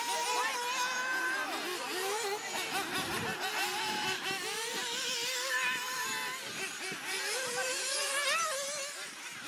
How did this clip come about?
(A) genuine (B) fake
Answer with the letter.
A